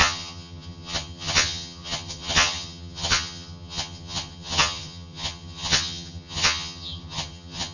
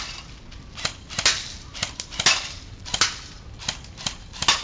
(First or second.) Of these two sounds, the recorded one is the second